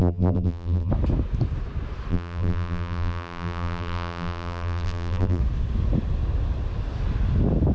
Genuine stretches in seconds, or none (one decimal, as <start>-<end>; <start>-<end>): 0.9-2.1; 5.4-7.7